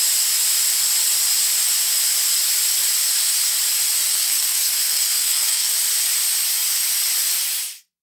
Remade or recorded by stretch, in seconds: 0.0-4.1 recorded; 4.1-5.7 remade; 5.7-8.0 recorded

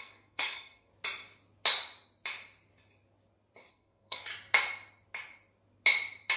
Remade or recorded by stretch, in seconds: 0.0-0.9 remade; 0.9-3.7 recorded; 3.7-4.3 remade; 4.3-6.4 recorded

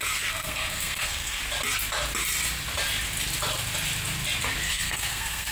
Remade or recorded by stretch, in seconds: 0.0-1.4 remade; 1.4-4.7 recorded; 4.7-5.5 remade

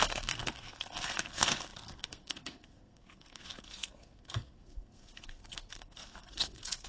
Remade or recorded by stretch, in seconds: 0.0-6.9 remade

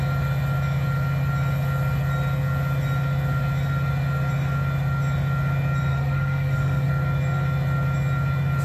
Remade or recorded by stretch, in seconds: 0.0-5.9 recorded; 5.9-6.9 remade; 6.9-8.6 recorded